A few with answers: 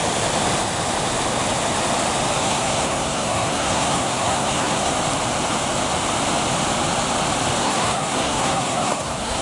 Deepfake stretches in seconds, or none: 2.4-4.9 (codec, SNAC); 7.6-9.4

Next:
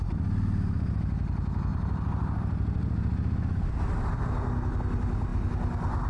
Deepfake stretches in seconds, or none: 1.7-3.8 (vocoder, BigVGAN v2)

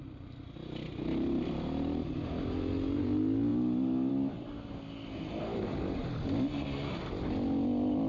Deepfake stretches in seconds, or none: none

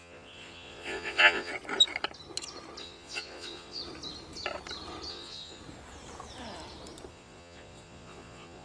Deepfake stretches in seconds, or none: 0.0-1.5 (vocoder, Vocos); 2.8-3.8; 5.1-5.6; 7.1-8.6

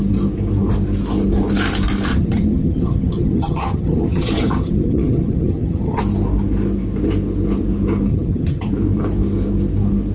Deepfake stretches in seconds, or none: 2.1-6.0 (vocoder, HiFi-GAN); 8.1-8.7

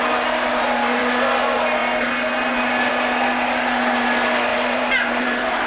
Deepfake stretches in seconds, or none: 0.5-1.0 (vocoder, BigVGAN v2); 4.5-5.7

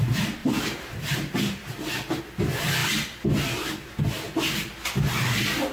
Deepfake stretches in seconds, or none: 0.4-2.2 (vocoder, BigVGAN v2)